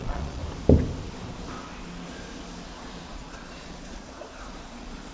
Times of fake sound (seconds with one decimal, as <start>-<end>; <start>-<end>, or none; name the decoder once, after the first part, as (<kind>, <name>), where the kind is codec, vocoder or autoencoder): 0.0-0.4 (vocoder, Vocos); 3.1-5.1